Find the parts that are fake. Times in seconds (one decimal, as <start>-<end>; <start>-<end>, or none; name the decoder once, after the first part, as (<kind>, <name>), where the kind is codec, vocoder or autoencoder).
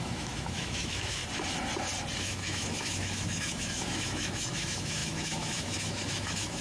0.0-1.2 (autoencoder, DAC-VAE); 2.2-6.6